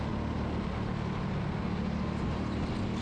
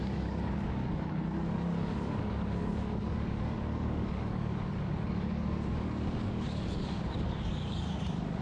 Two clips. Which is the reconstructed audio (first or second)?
second